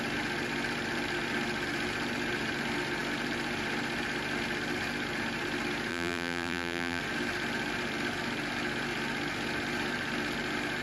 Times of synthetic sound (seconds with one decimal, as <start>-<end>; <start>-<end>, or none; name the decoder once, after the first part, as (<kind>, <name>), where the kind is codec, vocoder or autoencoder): 5.9-7.0 (vocoder, BigVGAN v2)